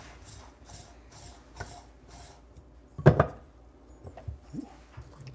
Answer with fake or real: real